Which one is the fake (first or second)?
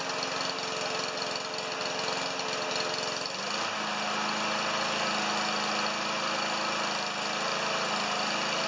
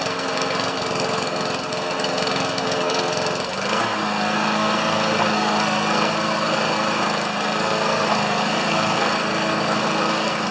second